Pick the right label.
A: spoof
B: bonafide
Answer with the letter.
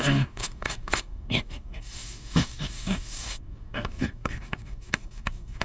A